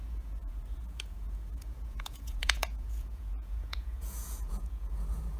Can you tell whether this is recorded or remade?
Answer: remade